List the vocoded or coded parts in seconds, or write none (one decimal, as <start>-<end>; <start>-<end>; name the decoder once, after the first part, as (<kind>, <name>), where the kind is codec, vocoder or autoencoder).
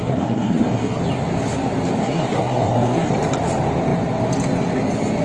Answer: 0.0-1.0 (codec, SNAC); 2.0-3.1